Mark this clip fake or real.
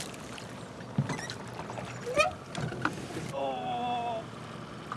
real